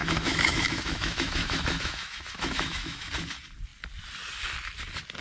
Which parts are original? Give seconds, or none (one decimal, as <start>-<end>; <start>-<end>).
3.1-5.2